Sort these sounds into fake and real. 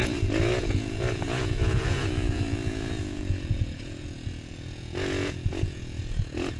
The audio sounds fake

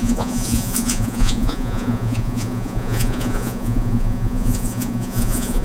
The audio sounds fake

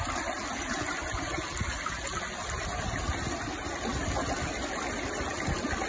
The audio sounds real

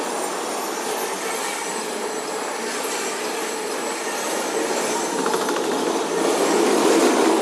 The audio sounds real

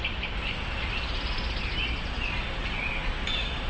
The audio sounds real